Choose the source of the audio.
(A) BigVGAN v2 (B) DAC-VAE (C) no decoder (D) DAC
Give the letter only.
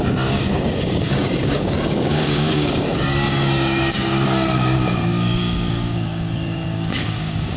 D